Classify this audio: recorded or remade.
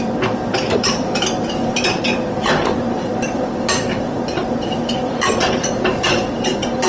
remade